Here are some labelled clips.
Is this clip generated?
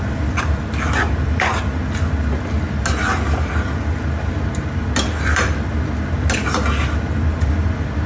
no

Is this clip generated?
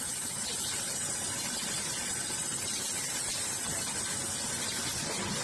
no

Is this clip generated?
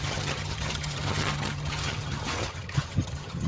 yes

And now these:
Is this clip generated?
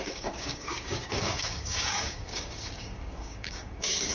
yes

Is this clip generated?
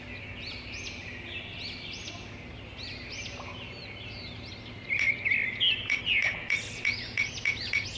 no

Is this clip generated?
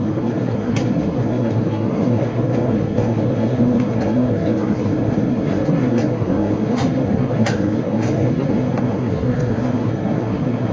yes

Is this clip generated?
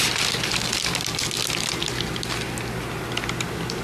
no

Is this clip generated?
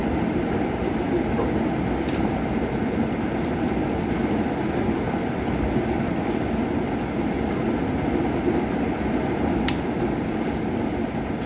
no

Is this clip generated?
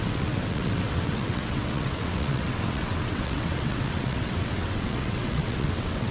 yes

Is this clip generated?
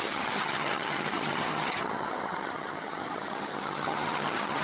yes